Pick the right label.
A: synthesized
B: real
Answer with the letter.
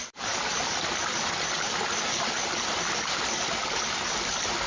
B